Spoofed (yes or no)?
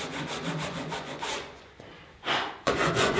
yes